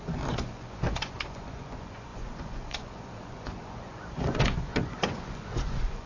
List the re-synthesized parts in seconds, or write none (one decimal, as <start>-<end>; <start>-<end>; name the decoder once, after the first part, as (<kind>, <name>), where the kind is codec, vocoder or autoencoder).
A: 0.0-6.1 (vocoder, Vocos)